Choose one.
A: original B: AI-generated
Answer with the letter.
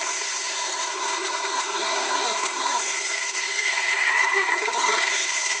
B